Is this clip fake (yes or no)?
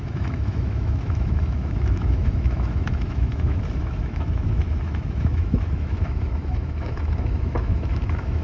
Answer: yes